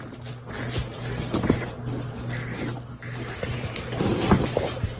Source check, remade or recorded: recorded